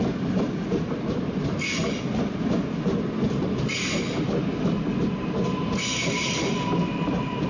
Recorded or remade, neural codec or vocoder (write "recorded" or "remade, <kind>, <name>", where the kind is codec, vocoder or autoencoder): recorded